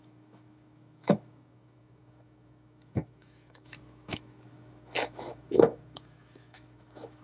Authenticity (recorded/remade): remade